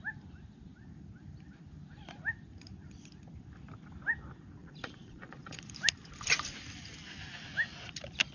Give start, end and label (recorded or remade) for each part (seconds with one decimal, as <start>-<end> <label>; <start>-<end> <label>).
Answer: 0.0-4.6 recorded; 4.6-5.7 remade; 5.7-8.3 recorded